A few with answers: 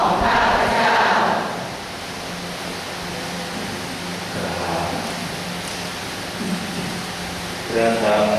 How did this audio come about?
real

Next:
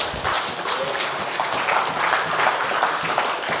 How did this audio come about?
real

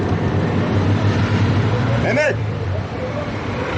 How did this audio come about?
fake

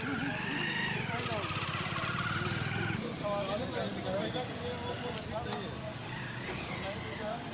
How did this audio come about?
real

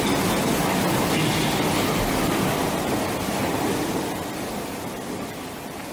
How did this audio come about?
real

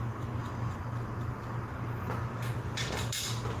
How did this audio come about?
real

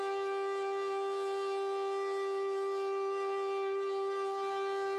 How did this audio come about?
real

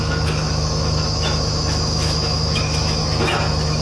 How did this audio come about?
fake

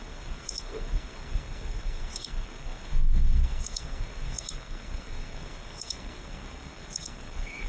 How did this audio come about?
fake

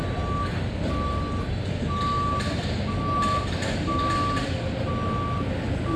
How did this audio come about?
real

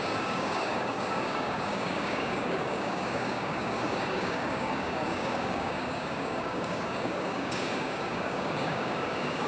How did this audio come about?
fake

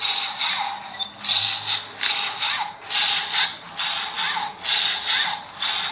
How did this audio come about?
real